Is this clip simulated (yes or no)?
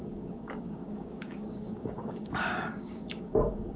yes